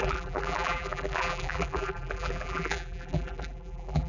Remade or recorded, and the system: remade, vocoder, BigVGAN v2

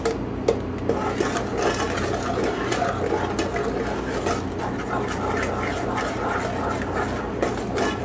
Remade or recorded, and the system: recorded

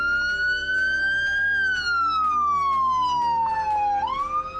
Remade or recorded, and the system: recorded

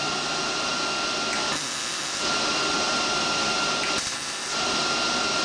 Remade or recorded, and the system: recorded